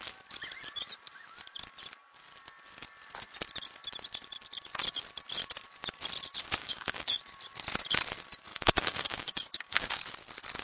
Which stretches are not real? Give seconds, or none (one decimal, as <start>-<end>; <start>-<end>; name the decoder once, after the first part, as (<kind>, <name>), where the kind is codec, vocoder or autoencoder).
6.6-7.2 (codec, DAC); 8.5-10.0